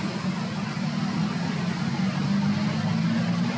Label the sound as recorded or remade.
recorded